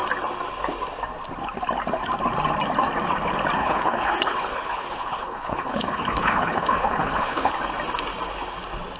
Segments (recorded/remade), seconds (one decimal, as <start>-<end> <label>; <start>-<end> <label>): 0.0-3.6 recorded; 3.6-7.5 remade; 7.5-9.0 recorded